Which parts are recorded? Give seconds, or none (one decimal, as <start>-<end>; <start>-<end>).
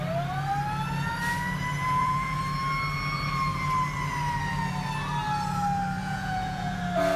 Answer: 0.0-1.8; 2.4-6.0; 6.8-7.2